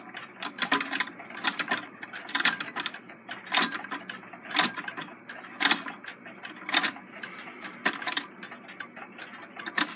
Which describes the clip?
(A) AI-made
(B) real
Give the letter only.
A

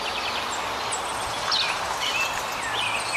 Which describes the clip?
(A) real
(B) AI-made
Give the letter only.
A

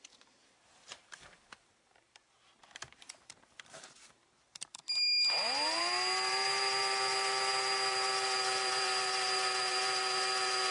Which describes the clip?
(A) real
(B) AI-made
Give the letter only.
B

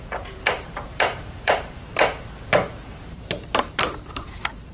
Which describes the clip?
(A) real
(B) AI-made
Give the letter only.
B